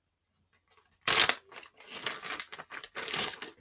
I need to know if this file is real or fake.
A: real